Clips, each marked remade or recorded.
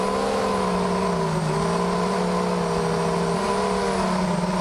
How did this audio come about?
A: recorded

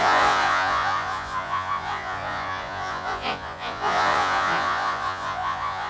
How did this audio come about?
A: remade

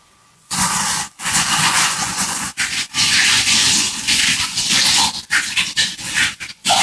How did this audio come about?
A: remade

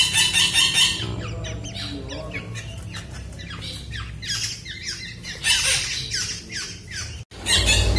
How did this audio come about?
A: recorded